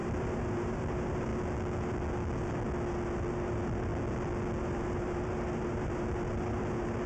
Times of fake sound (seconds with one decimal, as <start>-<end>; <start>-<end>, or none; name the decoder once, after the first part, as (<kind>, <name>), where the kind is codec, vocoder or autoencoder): 0.0-1.3 (vocoder, BigVGAN v2); 3.3-3.9; 4.6-7.1